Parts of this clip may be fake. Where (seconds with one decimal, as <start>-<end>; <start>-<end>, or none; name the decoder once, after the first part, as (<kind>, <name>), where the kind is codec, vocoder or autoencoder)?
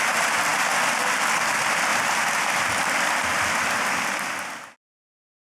0.0-0.5 (vocoder, BigVGAN v2); 1.3-1.9; 5.1-5.5